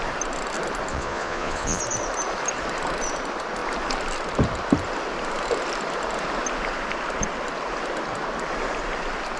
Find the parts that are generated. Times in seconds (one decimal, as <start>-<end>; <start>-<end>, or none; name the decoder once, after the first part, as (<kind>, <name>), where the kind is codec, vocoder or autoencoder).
0.9-1.8 (vocoder, Vocos)